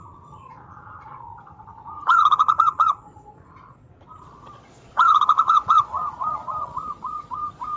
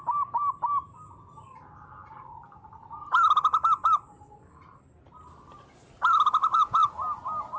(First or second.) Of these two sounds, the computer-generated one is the first